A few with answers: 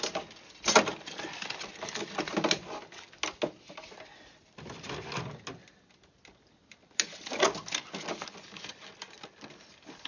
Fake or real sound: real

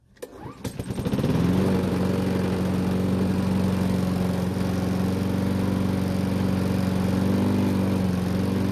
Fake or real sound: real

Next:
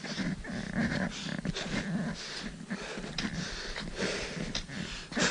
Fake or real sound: real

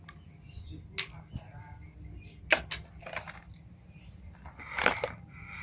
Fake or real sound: real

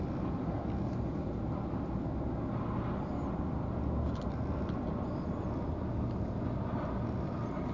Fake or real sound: real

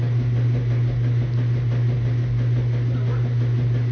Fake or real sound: real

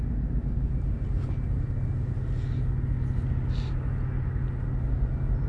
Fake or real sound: real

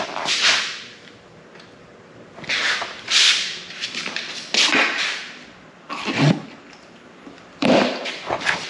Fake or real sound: fake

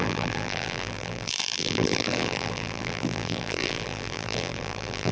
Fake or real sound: fake